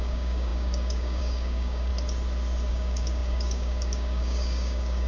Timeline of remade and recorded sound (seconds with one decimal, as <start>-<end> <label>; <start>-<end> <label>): 0.0-1.9 remade; 1.9-2.7 recorded; 2.7-5.1 remade